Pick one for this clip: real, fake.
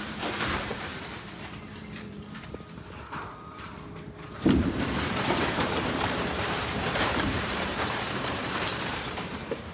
fake